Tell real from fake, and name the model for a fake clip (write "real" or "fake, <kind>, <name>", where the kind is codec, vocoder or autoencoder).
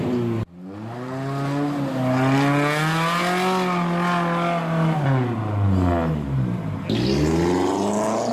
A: real